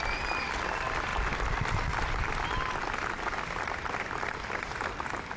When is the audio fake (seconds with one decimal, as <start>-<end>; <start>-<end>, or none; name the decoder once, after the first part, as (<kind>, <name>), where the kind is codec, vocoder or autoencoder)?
none